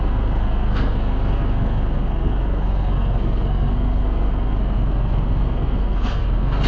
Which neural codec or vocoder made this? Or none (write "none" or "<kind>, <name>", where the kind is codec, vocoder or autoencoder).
codec, SNAC